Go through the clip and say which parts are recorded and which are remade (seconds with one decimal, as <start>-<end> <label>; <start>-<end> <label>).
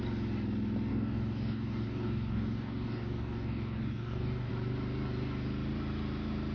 0.0-0.9 recorded; 0.9-4.5 remade; 4.5-6.5 recorded